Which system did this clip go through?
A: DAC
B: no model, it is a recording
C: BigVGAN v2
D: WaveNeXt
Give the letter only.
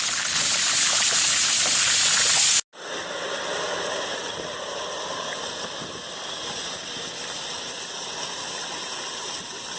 B